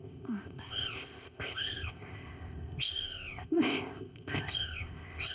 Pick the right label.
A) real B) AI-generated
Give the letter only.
B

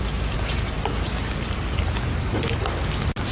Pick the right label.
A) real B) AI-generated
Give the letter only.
A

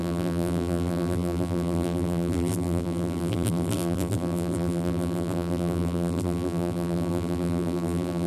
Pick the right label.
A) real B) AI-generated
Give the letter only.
B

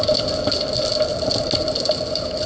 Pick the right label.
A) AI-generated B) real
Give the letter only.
B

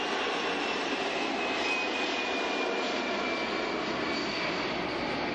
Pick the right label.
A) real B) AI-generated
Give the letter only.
A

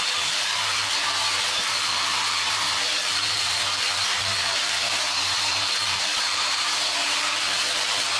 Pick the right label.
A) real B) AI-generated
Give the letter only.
B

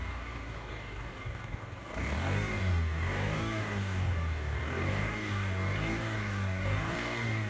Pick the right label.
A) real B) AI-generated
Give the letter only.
B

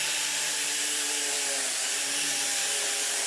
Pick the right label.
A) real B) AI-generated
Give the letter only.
B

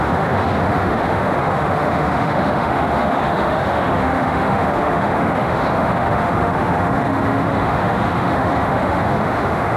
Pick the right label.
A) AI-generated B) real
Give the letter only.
A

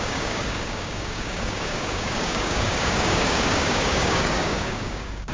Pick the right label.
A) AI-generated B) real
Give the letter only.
A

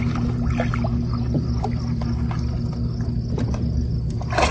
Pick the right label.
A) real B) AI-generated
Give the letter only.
A